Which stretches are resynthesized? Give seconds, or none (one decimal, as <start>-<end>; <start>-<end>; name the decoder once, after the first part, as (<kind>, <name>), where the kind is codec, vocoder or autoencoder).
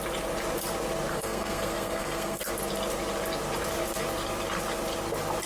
1.1-2.5 (codec, SNAC)